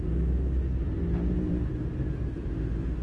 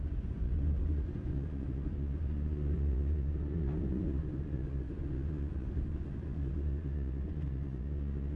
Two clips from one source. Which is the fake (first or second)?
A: second